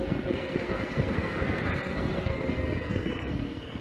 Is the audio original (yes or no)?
no